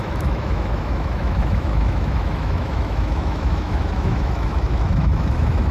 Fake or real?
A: fake